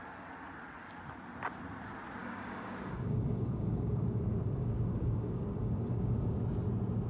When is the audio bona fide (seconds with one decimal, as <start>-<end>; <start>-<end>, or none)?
0.0-2.2; 6.4-7.1